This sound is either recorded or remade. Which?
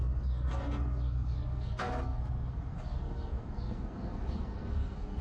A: remade